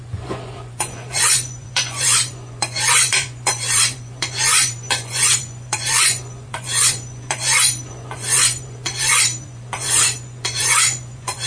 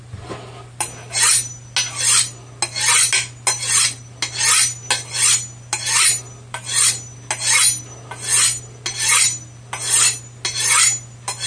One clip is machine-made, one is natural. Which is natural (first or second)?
second